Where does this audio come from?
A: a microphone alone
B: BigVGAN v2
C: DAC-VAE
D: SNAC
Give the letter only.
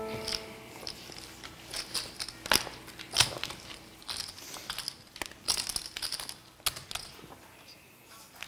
A